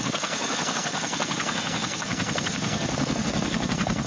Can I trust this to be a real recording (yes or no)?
no